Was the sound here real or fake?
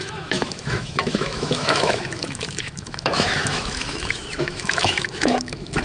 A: fake